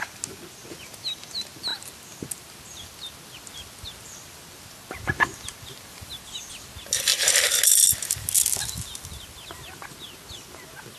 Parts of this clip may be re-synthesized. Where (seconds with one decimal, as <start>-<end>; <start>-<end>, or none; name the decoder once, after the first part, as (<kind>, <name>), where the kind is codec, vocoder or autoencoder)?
none